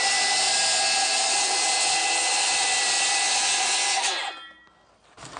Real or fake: real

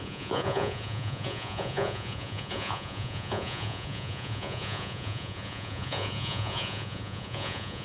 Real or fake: fake